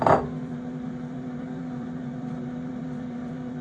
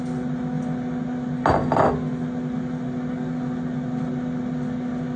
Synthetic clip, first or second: first